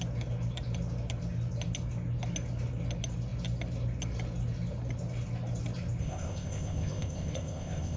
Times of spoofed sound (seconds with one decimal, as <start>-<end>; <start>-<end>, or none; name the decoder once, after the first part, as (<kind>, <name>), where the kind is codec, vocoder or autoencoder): 6.0-8.0 (codec, ZipCodec)

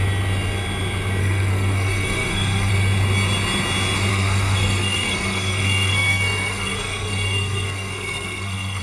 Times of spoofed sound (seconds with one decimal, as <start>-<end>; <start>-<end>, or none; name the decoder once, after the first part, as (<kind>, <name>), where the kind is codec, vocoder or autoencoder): 1.2-2.7 (codec, SNAC); 4.1-8.8

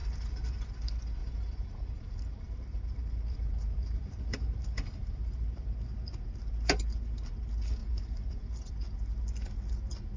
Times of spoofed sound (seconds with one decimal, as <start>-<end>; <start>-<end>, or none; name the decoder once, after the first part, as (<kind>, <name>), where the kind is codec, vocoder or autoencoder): 0.0-0.7 (vocoder, BigVGAN v2); 1.2-5.7; 7.8-8.7

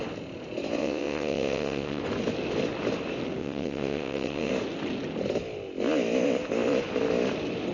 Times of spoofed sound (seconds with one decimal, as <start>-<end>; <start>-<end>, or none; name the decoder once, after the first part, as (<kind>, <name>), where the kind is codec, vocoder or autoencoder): 0.8-2.0 (vocoder, WaveNeXt); 3.4-4.5